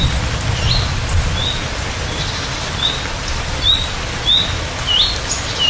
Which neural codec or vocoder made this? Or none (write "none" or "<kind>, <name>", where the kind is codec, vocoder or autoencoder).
none